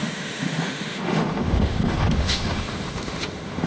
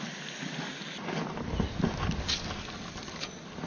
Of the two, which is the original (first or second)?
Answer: second